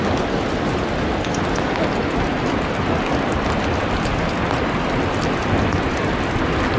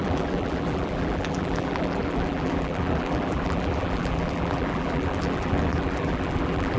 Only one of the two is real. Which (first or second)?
first